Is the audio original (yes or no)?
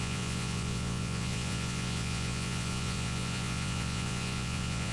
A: no